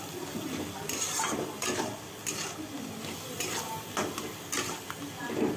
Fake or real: real